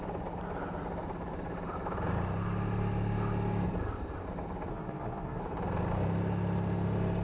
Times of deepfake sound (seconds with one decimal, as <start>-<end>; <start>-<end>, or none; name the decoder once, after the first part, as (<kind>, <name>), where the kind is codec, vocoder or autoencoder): 4.7-5.4 (codec, SNAC)